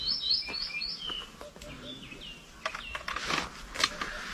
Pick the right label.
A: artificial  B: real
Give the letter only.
B